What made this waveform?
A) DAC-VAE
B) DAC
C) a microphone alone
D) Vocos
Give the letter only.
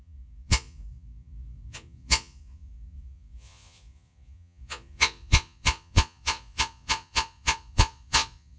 D